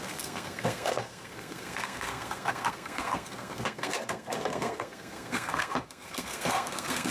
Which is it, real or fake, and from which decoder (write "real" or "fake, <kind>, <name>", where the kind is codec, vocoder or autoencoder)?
fake, codec, SNAC